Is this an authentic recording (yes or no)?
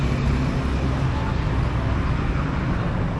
yes